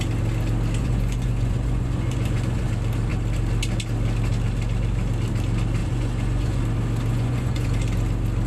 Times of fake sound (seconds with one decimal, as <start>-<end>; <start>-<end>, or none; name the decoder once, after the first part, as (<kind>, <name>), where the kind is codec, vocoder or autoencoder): 0.8-2.7 (vocoder, Vocos); 5.8-6.6; 7.1-7.7